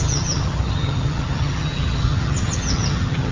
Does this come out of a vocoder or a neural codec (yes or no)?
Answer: yes